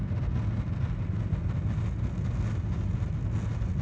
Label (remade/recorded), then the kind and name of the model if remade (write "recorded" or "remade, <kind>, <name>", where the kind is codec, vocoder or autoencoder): recorded